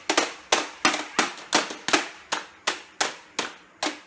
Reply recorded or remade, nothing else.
recorded